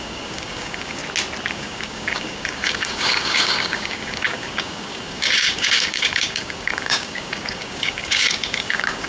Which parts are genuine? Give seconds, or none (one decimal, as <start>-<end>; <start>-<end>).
1.0-1.5